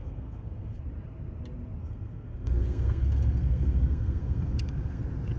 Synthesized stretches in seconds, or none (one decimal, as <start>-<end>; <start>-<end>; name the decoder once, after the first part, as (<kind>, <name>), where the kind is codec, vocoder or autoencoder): 0.0-0.8 (codec, SNAC); 1.8-5.0